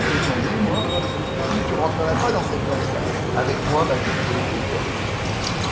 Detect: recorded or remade recorded